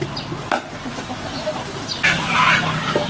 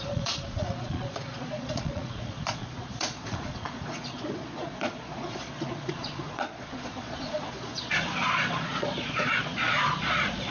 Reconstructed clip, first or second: second